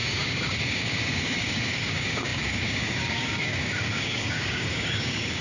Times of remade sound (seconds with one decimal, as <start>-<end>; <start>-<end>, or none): 0.0-5.4